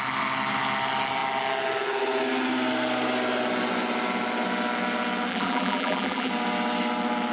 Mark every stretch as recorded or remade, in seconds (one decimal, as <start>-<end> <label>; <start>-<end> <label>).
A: 0.0-5.3 recorded; 5.3-6.3 remade; 6.3-7.3 recorded